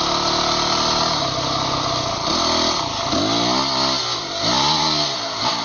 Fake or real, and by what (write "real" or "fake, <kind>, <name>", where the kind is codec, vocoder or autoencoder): real